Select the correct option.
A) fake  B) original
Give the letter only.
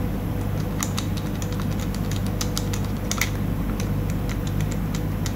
B